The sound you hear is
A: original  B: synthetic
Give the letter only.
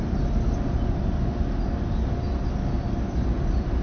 A